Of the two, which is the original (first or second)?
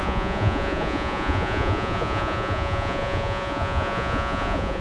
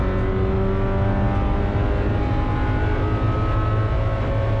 second